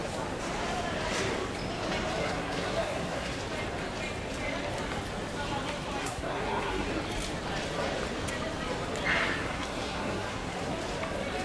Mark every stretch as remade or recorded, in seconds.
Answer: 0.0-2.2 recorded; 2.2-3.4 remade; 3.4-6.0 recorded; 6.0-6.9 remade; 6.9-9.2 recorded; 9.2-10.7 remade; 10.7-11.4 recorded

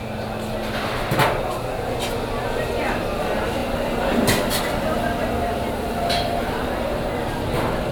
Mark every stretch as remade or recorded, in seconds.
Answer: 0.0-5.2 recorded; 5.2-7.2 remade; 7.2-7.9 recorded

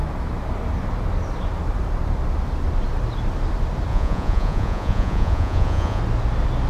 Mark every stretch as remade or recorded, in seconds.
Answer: 0.0-3.9 recorded; 3.9-6.0 remade; 6.0-6.7 recorded

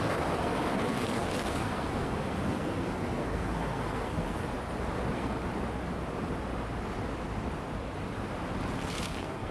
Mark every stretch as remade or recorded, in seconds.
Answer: 0.0-4.5 remade; 4.5-5.1 recorded; 5.1-5.5 remade; 5.5-8.8 recorded; 8.8-9.5 remade